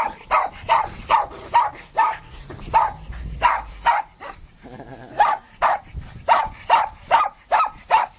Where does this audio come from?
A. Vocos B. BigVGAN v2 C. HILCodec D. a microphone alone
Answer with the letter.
B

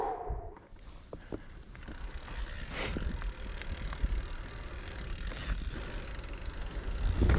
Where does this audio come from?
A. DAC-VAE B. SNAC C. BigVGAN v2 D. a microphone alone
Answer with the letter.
D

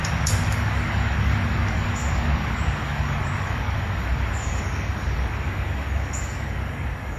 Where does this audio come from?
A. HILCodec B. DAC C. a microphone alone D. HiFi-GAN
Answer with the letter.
B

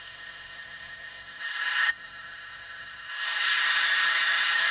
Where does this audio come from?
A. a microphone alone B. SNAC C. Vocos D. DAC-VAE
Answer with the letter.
B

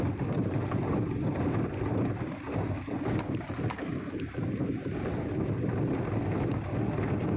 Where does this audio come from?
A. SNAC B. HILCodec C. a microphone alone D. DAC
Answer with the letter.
C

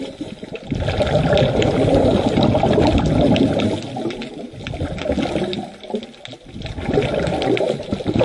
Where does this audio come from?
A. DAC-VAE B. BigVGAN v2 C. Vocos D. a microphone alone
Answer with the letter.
D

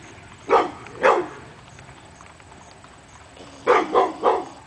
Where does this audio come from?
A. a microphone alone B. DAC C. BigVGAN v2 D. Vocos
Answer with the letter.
A